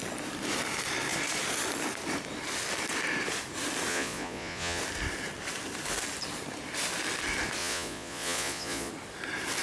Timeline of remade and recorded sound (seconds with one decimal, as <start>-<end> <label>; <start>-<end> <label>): 0.0-3.9 recorded; 3.9-4.8 remade; 4.8-7.6 recorded; 7.6-8.9 remade; 8.9-9.6 recorded